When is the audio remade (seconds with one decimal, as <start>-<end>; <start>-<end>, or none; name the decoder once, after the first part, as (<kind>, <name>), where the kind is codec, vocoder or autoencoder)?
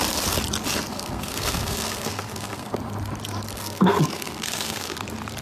0.9-2.7 (codec, SNAC); 3.5-5.0